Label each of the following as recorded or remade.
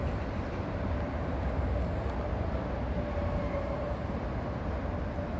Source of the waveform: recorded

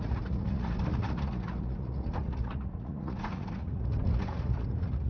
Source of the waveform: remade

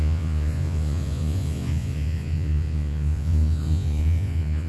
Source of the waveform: remade